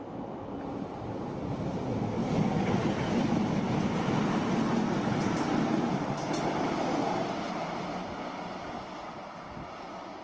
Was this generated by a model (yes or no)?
no